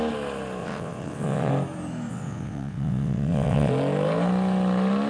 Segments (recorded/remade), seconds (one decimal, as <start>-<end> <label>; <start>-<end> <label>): 0.0-0.6 recorded; 0.6-1.5 remade; 1.5-2.1 recorded; 2.1-3.7 remade; 3.7-5.1 recorded